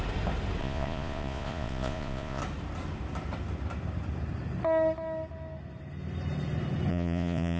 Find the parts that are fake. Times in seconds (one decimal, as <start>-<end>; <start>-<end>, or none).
0.6-2.4; 6.9-7.6